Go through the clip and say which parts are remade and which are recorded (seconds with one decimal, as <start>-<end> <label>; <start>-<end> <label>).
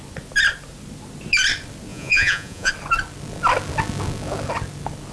0.0-1.9 recorded; 1.9-2.7 remade; 2.7-5.1 recorded